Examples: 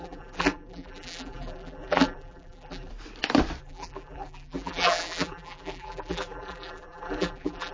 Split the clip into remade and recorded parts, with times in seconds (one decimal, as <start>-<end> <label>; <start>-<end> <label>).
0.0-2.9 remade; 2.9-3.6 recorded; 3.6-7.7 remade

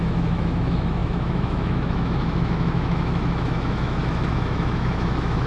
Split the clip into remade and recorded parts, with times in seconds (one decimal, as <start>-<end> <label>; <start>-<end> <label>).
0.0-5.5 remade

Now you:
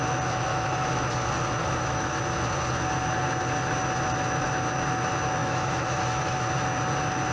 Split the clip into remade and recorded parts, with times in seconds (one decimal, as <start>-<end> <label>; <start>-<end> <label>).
0.0-0.5 recorded; 0.5-1.1 remade; 1.1-1.6 recorded; 1.6-2.2 remade; 2.2-5.4 recorded; 5.4-6.4 remade; 6.4-7.3 recorded

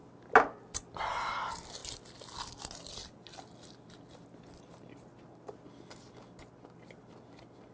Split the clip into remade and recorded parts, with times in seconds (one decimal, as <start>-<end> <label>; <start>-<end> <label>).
0.0-7.7 recorded

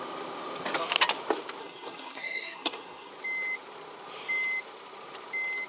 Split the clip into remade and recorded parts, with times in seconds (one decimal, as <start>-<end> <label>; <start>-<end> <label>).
0.0-1.6 recorded; 1.6-3.1 remade; 3.1-5.7 recorded

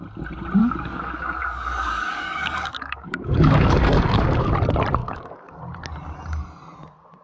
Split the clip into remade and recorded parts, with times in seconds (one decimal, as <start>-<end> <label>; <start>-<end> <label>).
0.0-0.6 recorded; 0.6-4.5 remade; 4.5-5.0 recorded; 5.0-5.6 remade; 5.6-7.2 recorded

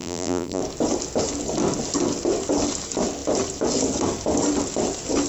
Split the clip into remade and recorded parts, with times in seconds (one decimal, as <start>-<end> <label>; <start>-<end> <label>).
0.0-0.6 remade; 0.6-5.3 recorded

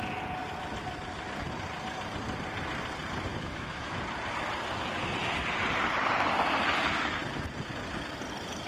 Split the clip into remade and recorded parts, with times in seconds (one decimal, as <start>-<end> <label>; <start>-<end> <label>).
0.0-3.3 recorded; 3.3-4.0 remade; 4.0-8.7 recorded